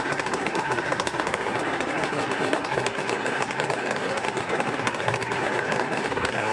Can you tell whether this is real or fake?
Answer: fake